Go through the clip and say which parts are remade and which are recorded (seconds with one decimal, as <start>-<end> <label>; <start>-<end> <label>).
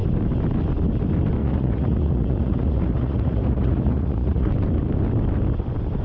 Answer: 0.0-1.4 recorded; 1.4-4.5 remade; 4.5-6.0 recorded